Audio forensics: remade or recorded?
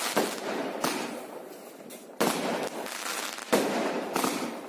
recorded